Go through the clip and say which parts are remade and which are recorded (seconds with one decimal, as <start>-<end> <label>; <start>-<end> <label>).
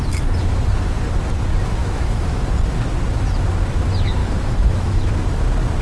0.0-1.8 recorded; 1.8-2.4 remade; 2.4-4.2 recorded; 4.2-5.1 remade; 5.1-5.8 recorded